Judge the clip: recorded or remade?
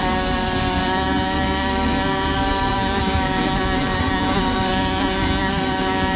remade